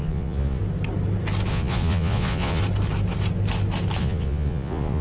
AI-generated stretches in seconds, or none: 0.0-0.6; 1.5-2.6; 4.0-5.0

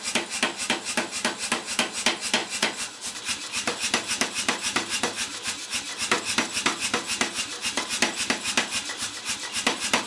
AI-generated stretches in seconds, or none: 2.4-3.0

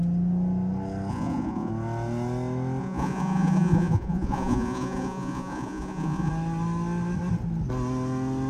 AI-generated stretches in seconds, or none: 1.1-1.7; 2.8-6.3

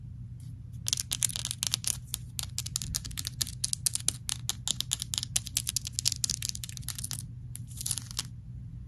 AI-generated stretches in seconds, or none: none

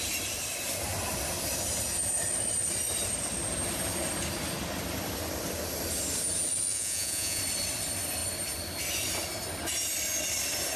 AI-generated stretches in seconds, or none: 6.7-7.4

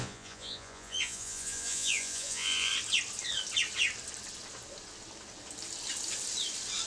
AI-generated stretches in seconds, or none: 0.0-2.7

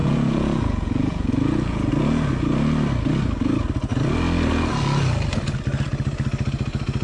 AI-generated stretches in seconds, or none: 0.0-1.9